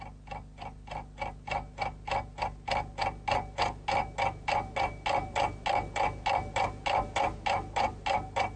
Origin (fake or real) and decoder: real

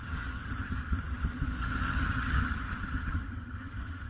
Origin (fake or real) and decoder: fake, vocoder, HiFi-GAN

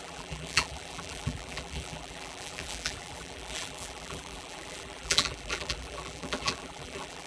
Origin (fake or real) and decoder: fake, vocoder, BigVGAN v2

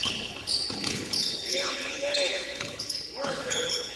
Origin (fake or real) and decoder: fake, codec, HILCodec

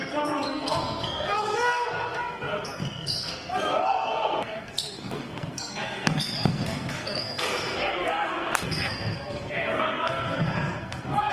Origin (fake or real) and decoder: fake, codec, SNAC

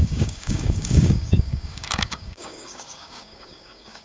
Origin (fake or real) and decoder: fake, codec, DAC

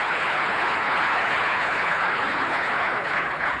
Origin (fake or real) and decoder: fake, codec, HILCodec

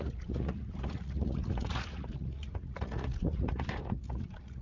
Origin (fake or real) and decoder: fake, vocoder, Vocos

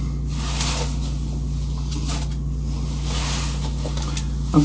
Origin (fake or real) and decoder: real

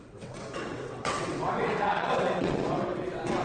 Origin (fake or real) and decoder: fake, vocoder, WaveNeXt